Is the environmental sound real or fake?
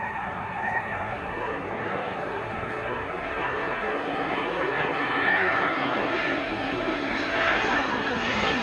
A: fake